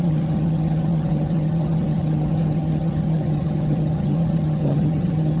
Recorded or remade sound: remade